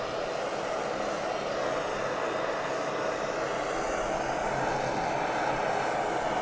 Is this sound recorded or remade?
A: recorded